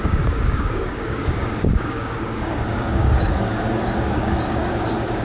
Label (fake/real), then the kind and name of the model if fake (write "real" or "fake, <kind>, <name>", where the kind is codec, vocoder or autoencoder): fake, codec, DAC